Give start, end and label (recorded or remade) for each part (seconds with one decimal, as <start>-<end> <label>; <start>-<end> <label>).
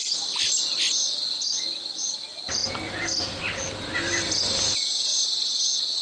0.0-0.6 remade; 0.6-2.6 recorded; 2.6-6.0 remade